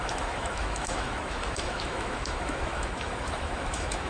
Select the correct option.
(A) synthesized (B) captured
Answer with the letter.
A